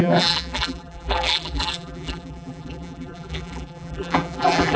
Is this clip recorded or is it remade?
remade